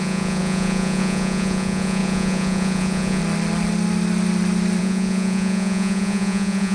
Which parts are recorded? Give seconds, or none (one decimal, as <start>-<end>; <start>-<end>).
3.2-4.8